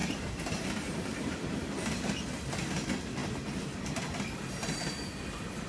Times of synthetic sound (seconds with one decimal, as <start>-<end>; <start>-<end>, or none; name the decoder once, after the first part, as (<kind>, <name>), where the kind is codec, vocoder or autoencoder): none